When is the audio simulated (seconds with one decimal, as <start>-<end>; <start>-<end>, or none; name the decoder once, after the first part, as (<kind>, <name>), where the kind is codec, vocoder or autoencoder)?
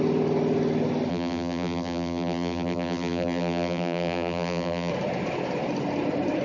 1.1-4.9 (vocoder, BigVGAN v2)